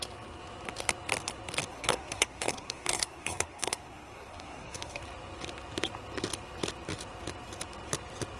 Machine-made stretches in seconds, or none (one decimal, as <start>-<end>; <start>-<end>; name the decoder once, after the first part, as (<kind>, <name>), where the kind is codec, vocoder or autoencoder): 1.7-5.0 (codec, SNAC)